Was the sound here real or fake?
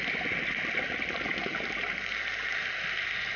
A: real